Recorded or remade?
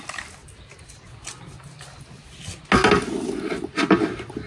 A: recorded